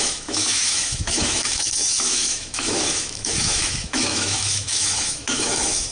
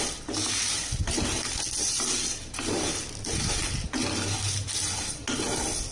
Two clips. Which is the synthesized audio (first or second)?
first